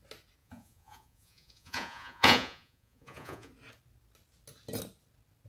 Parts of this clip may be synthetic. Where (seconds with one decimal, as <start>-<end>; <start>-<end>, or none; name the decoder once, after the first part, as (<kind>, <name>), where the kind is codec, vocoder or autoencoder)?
0.4-3.5 (vocoder, Vocos)